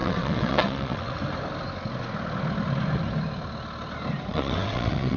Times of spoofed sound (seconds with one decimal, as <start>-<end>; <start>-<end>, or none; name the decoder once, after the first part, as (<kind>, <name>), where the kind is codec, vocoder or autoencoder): 0.0-1.2 (vocoder, WaveNeXt); 4.3-5.2